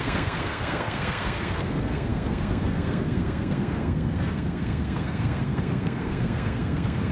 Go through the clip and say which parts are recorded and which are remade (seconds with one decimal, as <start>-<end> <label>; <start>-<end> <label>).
0.0-7.1 remade

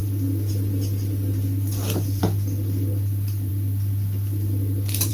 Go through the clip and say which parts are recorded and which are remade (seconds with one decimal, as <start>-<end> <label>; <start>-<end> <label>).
0.0-5.1 recorded

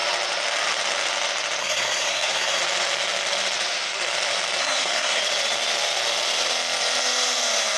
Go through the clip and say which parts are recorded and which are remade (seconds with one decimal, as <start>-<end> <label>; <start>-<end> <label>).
0.0-1.6 recorded; 1.6-2.6 remade; 2.6-4.6 recorded; 4.6-5.2 remade; 5.2-7.8 recorded

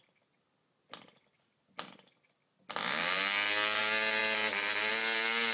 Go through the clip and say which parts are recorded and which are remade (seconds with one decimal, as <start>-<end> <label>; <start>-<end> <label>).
0.0-5.5 recorded

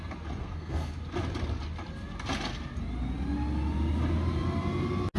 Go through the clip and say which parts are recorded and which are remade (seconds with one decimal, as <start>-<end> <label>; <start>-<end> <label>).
0.0-0.4 recorded; 0.4-0.9 remade; 0.9-5.2 recorded

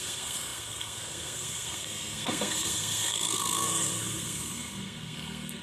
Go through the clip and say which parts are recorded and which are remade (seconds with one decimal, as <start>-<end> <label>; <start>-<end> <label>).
0.0-5.6 remade